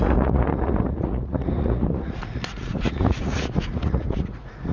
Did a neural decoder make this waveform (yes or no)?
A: yes